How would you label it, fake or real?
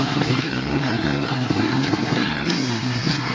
fake